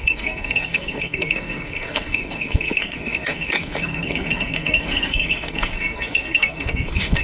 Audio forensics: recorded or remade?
remade